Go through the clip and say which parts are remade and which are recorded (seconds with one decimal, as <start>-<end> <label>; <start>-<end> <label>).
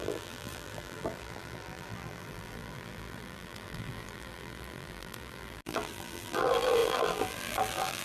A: 0.0-8.0 remade